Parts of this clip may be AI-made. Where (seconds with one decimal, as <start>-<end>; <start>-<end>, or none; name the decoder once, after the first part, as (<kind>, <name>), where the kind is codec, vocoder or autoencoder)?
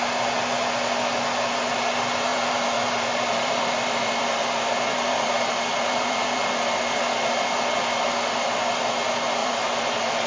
2.3-6.8 (vocoder, BigVGAN v2); 9.4-10.3